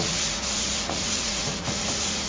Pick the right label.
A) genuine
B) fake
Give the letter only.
B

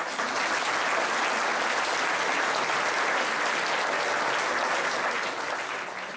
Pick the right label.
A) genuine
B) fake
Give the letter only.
A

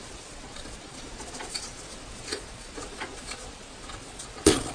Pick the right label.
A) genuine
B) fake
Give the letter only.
B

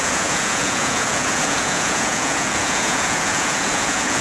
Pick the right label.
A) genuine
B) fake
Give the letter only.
B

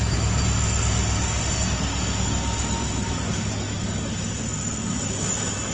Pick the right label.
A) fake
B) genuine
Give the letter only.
B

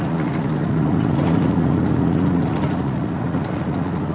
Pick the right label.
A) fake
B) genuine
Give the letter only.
A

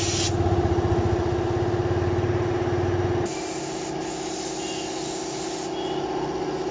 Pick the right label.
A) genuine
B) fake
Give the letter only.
A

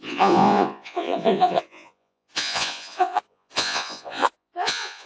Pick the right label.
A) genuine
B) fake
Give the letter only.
B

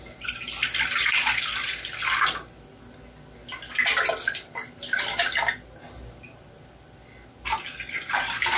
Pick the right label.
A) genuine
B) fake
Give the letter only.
A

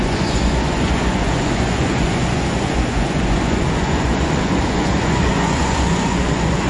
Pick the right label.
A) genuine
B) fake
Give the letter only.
B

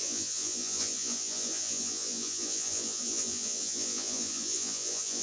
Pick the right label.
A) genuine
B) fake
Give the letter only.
B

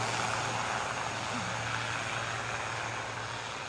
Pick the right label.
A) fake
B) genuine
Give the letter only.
B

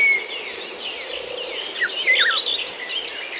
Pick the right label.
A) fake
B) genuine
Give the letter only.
B